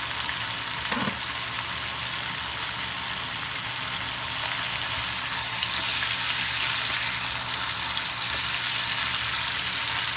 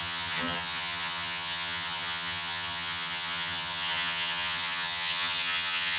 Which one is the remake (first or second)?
second